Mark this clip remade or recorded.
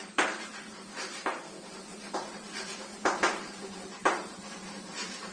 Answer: remade